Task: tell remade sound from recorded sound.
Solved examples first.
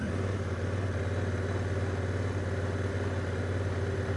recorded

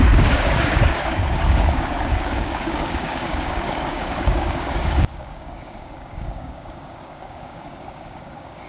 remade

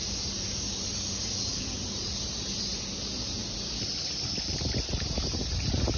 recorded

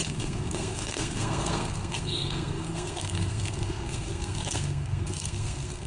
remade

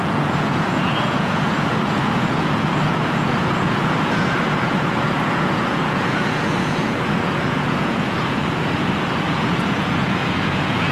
remade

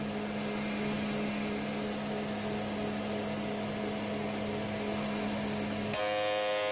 recorded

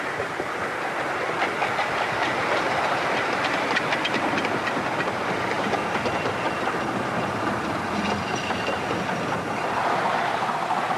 recorded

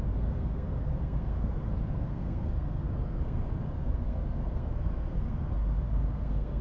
remade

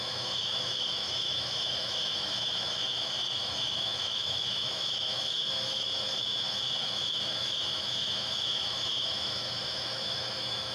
remade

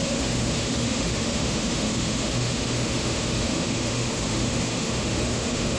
remade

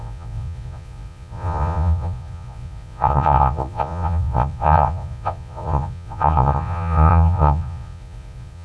remade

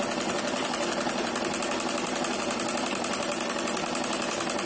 recorded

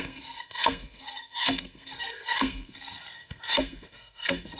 remade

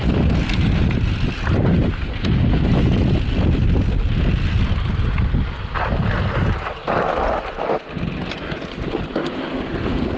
recorded